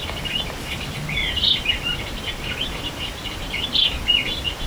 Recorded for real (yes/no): yes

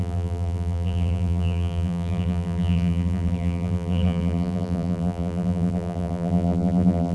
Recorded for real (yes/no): no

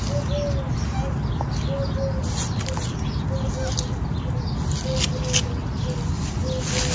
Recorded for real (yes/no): yes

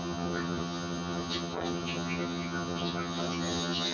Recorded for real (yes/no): no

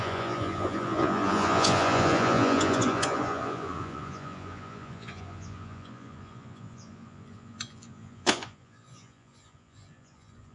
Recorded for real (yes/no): no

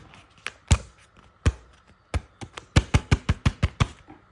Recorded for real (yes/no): yes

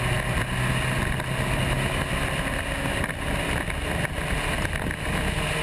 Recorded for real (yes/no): yes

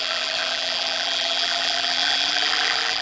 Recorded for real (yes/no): no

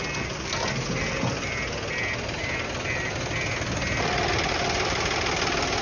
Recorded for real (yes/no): yes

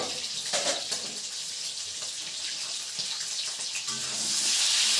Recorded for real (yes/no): yes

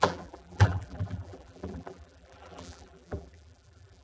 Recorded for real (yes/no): no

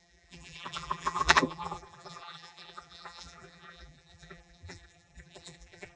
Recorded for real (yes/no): no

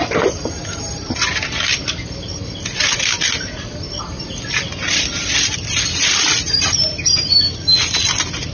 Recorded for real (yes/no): yes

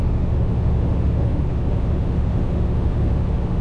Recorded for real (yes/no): no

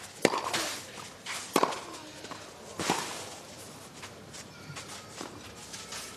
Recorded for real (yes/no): yes